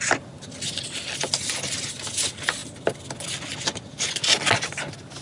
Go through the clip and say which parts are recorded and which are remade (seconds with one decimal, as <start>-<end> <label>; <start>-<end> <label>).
0.0-5.2 recorded